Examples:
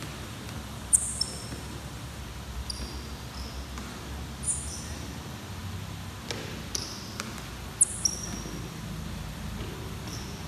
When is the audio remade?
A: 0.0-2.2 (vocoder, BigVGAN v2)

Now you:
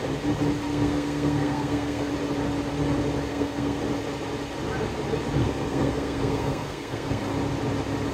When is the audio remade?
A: 0.7-2.1 (codec, SNAC); 3.3-3.8; 5.4-7.2

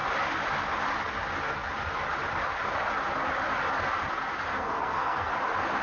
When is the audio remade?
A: 4.5-5.3 (codec, SNAC)

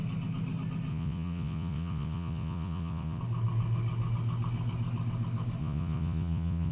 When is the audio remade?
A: 0.9-3.2 (vocoder, Vocos); 5.6-6.7

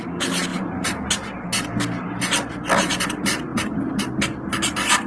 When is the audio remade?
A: 0.5-1.1 (vocoder, BigVGAN v2); 3.5-4.0; 4.5-5.1